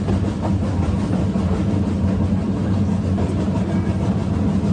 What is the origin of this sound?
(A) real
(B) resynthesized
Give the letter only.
A